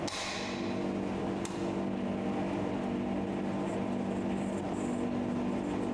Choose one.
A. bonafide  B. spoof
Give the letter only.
A